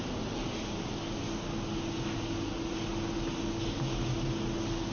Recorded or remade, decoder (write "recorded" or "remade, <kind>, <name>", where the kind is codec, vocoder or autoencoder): recorded